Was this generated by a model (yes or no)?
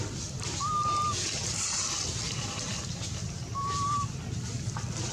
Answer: yes